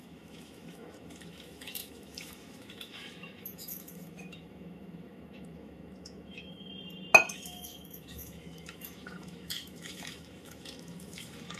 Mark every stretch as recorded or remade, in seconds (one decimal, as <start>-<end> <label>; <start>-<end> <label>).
0.0-6.7 remade; 6.7-7.3 recorded; 7.3-11.6 remade